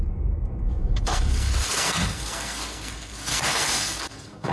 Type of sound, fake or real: fake